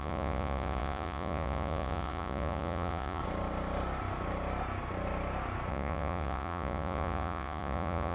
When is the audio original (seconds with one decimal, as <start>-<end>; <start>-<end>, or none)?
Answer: 3.2-5.7